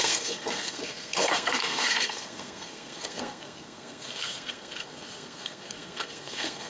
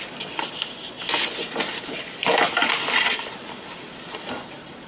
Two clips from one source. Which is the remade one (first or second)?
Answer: first